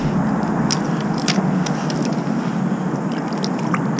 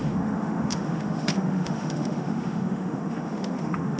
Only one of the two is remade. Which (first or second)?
second